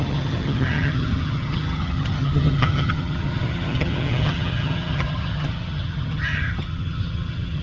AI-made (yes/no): yes